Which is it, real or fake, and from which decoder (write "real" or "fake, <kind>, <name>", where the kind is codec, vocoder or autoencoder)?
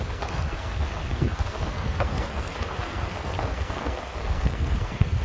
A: fake, codec, SNAC